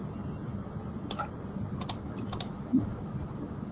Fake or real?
real